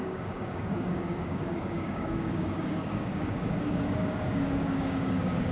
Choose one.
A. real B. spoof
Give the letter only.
B